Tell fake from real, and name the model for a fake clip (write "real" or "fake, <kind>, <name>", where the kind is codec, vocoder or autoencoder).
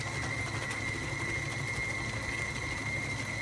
real